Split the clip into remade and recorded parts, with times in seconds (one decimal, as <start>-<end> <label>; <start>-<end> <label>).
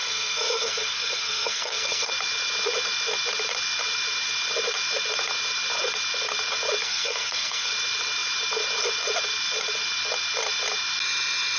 0.0-2.1 remade; 2.1-6.8 recorded; 6.8-7.7 remade; 7.7-11.6 recorded